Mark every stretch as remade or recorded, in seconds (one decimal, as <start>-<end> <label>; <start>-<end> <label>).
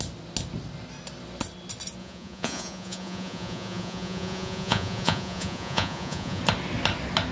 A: 0.0-2.0 recorded; 2.0-6.4 remade; 6.4-7.3 recorded